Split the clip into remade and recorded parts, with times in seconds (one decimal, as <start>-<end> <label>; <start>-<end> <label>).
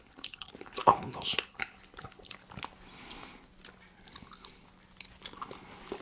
0.0-2.4 remade; 2.4-6.0 recorded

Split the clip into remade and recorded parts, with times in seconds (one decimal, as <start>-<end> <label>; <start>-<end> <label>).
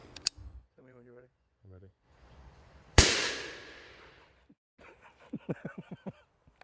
0.0-4.0 remade; 4.0-6.6 recorded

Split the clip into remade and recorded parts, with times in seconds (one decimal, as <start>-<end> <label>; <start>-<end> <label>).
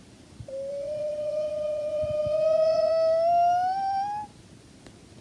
0.0-0.7 recorded; 0.7-2.9 remade; 2.9-5.2 recorded